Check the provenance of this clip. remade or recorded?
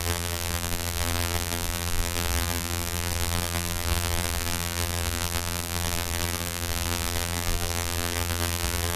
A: remade